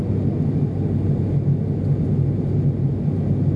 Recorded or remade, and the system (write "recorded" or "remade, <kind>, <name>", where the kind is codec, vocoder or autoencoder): recorded